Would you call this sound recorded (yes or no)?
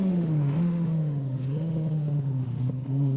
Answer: no